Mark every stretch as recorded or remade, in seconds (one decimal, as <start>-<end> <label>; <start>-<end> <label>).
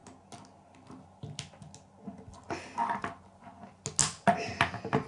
0.0-5.1 recorded